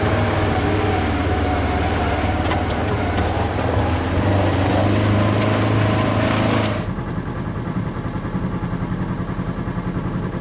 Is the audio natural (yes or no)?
yes